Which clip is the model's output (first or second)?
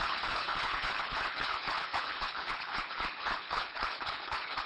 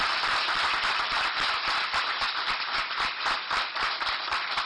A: first